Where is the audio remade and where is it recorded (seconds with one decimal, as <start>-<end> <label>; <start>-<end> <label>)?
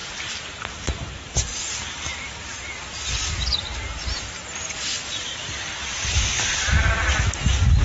0.0-0.8 remade; 0.8-4.9 recorded; 4.9-6.1 remade; 6.1-7.8 recorded